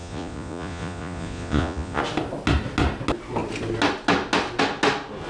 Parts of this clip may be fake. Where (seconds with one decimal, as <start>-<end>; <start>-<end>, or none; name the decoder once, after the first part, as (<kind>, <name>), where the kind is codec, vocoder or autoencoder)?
0.0-2.0 (vocoder, Vocos)